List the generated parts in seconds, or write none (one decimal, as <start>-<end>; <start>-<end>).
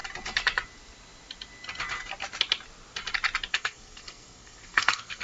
3.5-5.2